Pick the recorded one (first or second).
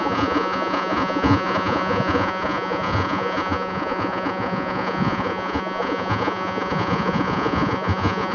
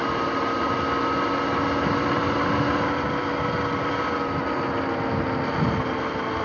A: second